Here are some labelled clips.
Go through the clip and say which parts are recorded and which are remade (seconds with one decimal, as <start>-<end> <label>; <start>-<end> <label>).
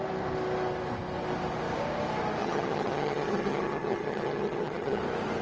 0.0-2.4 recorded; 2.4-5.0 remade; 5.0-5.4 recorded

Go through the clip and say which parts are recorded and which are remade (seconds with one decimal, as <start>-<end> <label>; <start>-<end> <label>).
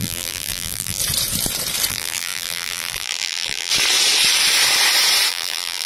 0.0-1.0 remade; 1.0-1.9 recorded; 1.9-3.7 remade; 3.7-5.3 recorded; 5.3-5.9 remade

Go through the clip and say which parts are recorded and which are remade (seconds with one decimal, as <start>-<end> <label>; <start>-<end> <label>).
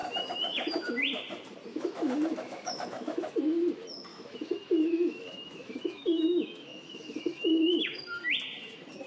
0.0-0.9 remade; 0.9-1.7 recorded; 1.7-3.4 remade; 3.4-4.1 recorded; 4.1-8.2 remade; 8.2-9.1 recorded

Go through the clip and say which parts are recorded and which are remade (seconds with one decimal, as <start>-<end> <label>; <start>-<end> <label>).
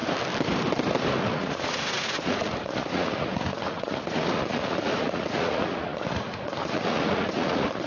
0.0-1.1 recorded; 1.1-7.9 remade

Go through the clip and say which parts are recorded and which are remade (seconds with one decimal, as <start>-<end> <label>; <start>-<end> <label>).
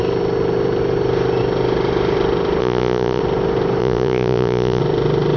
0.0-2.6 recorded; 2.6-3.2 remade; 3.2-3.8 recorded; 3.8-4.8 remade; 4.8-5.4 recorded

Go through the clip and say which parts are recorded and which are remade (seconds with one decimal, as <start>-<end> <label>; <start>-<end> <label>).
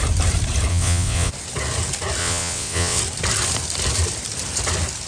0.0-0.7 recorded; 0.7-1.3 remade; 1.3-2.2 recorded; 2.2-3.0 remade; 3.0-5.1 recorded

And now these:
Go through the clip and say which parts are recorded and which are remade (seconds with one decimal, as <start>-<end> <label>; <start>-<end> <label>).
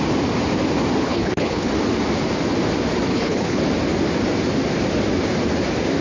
0.0-1.0 recorded; 1.0-1.7 remade; 1.7-3.1 recorded; 3.1-3.6 remade; 3.6-6.0 recorded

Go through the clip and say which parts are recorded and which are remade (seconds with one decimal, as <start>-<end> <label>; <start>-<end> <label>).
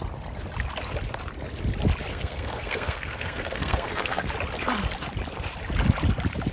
0.0-2.1 recorded; 2.1-4.3 remade; 4.3-6.5 recorded